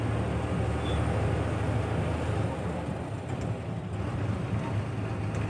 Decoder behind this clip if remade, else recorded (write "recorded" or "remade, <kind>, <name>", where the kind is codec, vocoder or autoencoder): recorded